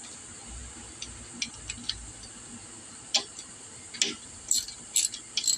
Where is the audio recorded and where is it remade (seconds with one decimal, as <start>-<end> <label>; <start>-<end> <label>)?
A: 0.0-5.6 recorded